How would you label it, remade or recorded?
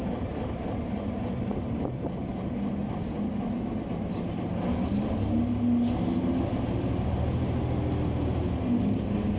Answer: recorded